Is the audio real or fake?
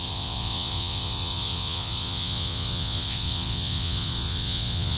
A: fake